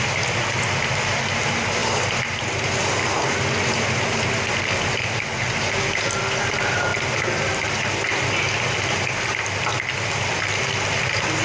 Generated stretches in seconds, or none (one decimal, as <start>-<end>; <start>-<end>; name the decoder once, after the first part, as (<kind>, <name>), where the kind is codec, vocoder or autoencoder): none